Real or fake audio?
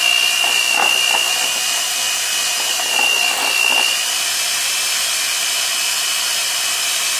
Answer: real